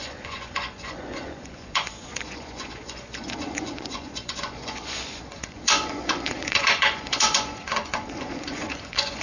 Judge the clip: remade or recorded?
remade